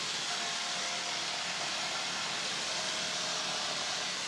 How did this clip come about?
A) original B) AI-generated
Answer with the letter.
A